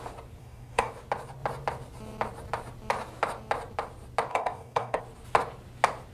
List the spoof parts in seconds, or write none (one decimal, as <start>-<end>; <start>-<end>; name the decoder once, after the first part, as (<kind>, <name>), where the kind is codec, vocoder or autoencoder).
0.4-0.9 (codec, DAC); 4.3-5.0